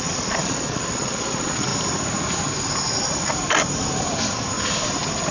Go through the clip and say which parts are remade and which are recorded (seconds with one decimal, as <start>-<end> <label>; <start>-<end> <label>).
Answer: 0.0-1.7 remade; 1.7-5.3 recorded

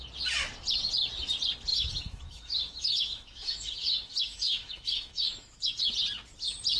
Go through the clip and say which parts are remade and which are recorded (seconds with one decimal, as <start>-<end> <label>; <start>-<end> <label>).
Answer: 0.0-1.7 recorded; 1.7-5.8 remade; 5.8-6.8 recorded

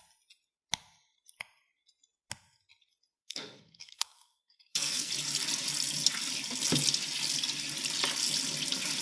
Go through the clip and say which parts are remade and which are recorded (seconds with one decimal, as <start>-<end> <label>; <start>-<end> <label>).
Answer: 0.0-3.2 recorded; 3.2-5.1 remade; 5.1-9.0 recorded

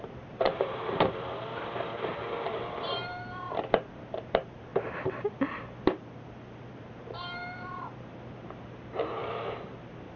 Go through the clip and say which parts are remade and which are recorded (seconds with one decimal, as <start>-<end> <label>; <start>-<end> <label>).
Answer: 0.0-4.7 remade; 4.7-7.0 recorded; 7.0-10.2 remade

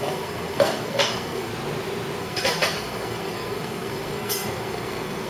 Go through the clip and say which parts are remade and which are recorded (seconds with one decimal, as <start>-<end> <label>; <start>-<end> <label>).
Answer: 0.0-1.5 remade; 1.5-2.2 recorded; 2.2-5.3 remade

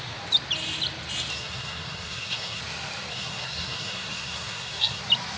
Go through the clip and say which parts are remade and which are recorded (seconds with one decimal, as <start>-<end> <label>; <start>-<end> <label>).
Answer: 0.0-1.3 recorded; 1.3-2.6 remade; 2.6-3.1 recorded; 3.1-5.0 remade; 5.0-5.4 recorded

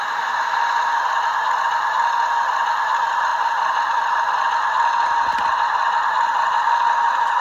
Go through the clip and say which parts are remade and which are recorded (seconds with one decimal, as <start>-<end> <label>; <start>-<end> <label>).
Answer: 0.0-7.4 recorded